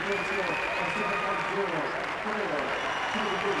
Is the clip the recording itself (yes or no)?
yes